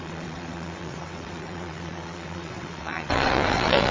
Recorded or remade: remade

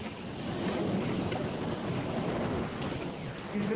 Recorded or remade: recorded